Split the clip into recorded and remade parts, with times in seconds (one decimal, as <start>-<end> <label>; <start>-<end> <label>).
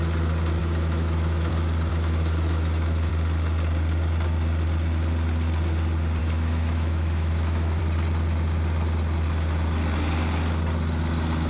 0.0-0.6 recorded; 0.6-1.5 remade; 1.5-1.9 recorded; 1.9-3.1 remade; 3.1-6.2 recorded; 6.2-7.8 remade; 7.8-11.5 recorded